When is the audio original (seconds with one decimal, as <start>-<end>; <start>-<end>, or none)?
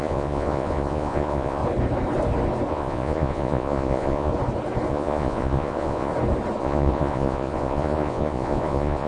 1.6-2.7; 4.3-4.9; 6.1-6.6